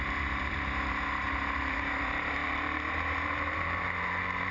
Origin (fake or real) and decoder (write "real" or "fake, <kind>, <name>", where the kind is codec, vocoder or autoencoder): fake, vocoder, BigVGAN v2